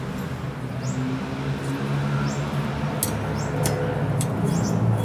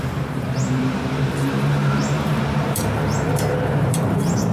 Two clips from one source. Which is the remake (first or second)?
second